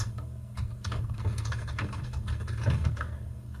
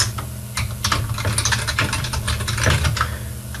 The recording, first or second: second